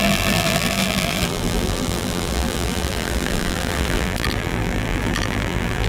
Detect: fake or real fake